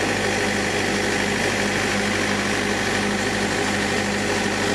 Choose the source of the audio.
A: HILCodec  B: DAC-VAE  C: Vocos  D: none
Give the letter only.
D